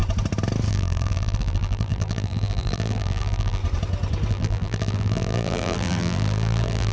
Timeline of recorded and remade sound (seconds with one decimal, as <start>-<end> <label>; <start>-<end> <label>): 0.0-0.7 recorded; 0.7-3.6 remade; 3.6-4.3 recorded; 4.3-6.9 remade